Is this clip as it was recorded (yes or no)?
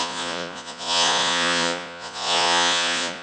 no